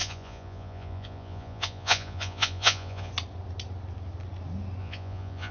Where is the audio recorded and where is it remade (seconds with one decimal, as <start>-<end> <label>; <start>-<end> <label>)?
0.0-3.1 remade; 3.1-4.8 recorded; 4.8-5.5 remade